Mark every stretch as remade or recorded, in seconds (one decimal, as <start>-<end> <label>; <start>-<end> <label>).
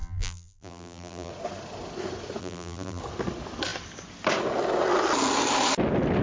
0.0-1.3 remade; 1.3-2.4 recorded; 2.4-3.0 remade; 3.0-6.2 recorded